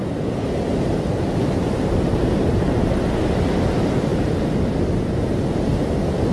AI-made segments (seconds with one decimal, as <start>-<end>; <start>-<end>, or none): 0.7-3.1